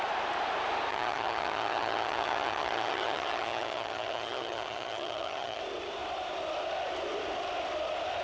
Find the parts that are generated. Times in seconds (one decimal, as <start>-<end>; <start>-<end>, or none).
0.9-5.6